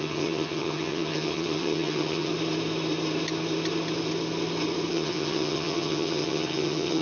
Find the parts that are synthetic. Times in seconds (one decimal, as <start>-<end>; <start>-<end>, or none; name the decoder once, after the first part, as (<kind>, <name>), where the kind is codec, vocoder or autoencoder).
0.0-2.3 (vocoder, HiFi-GAN); 4.9-7.0